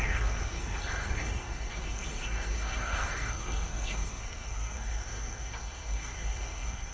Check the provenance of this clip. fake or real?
fake